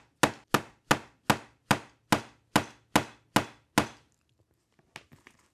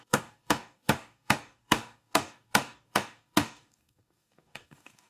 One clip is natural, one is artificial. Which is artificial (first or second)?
second